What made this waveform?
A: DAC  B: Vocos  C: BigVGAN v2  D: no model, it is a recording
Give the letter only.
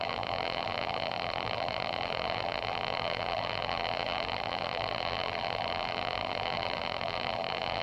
C